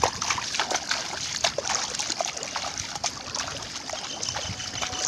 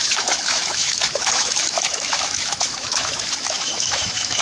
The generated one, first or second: second